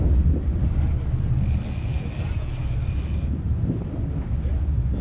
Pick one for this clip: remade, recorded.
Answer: recorded